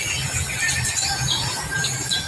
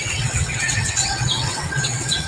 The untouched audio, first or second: first